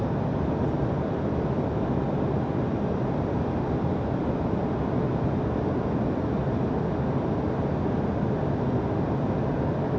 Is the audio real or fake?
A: real